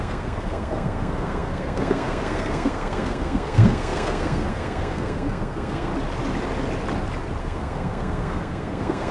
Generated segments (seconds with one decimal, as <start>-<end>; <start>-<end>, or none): 0.0-5.9; 7.4-9.1